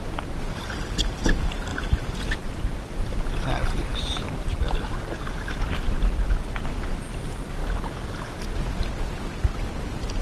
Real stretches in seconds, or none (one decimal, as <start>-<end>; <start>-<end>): 0.0-10.2